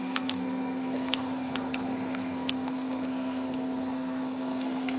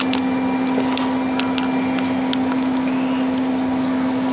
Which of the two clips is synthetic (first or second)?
first